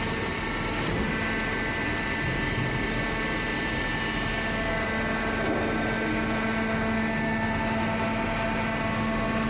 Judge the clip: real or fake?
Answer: real